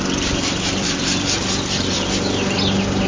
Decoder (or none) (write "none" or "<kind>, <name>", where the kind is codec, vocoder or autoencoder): vocoder, BigVGAN v2